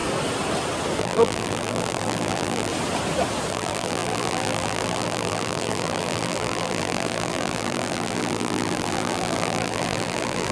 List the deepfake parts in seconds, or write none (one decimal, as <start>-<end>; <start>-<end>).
1.0-2.7; 3.5-10.5